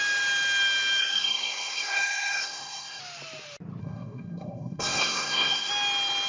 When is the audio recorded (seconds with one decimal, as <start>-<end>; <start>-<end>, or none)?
0.0-1.0; 3.0-3.8; 5.7-6.3